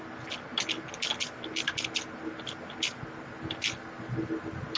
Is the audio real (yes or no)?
yes